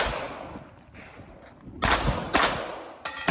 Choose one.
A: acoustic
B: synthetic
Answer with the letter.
A